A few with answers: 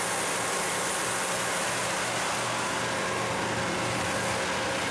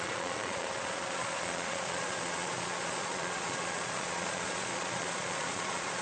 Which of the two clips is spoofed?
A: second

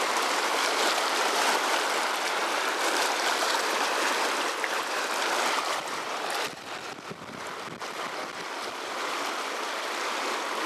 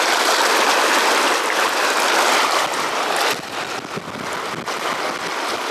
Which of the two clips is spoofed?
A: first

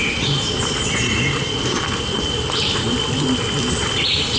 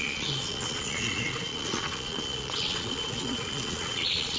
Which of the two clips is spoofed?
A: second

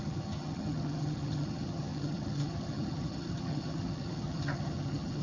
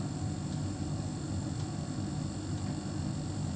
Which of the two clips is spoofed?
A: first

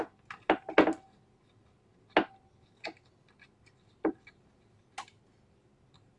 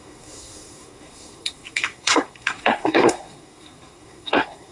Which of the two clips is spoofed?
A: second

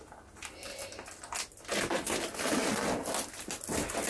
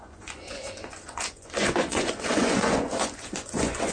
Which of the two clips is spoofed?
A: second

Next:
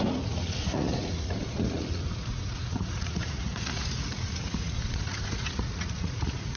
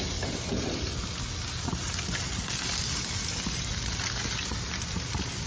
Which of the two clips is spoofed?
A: first